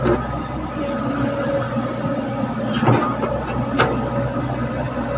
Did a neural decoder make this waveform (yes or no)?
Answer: no